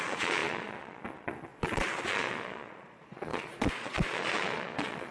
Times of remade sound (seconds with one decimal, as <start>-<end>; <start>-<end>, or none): 0.0-5.1